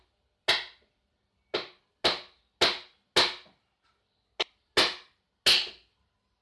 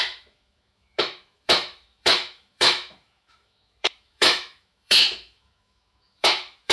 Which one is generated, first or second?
second